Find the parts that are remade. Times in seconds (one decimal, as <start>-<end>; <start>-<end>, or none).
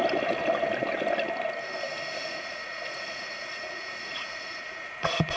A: 2.1-5.4